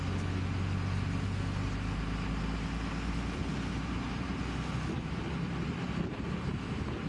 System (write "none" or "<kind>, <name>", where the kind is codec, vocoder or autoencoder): none